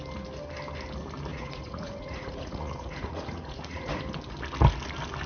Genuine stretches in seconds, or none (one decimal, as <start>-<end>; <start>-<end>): 0.0-1.3; 4.0-5.3